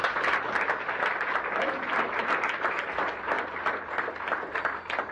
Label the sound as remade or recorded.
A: recorded